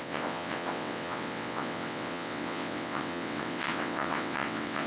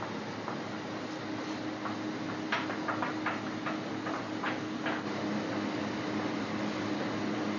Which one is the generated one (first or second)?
first